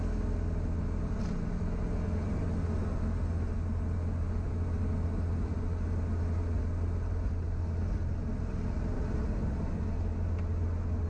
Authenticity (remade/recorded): recorded